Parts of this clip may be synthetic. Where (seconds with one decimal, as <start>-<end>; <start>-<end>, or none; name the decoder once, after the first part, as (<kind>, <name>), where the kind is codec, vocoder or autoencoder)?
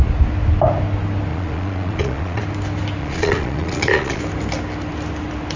1.3-2.4 (vocoder, Vocos); 3.0-4.2